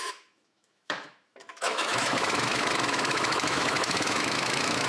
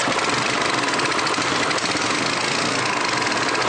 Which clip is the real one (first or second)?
second